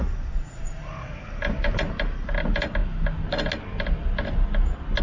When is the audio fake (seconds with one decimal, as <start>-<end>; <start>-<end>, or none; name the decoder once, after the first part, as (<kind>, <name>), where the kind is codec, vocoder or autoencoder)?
0.0-0.9 (vocoder, Vocos)